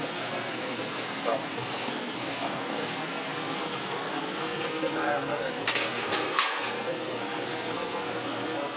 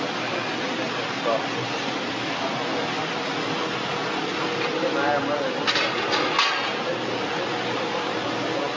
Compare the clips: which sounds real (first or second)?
second